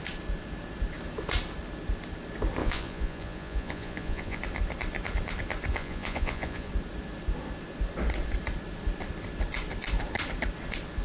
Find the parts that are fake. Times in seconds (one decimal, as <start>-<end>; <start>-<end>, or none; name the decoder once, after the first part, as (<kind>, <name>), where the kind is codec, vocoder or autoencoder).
2.6-4.4 (vocoder, Vocos); 5.7-6.7